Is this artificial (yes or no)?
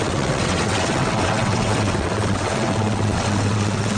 yes